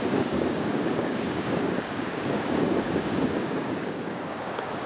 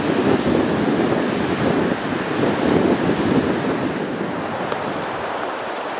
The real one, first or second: second